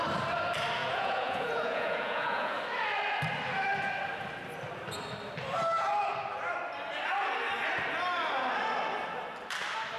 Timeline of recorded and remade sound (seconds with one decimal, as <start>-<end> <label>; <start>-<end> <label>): 0.0-0.8 recorded; 0.8-2.6 remade; 2.6-10.0 recorded